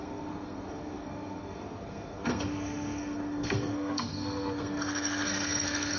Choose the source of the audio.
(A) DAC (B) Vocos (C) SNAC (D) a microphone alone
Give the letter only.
C